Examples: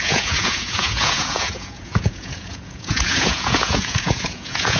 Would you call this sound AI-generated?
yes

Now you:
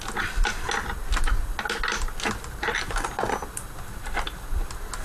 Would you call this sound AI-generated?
no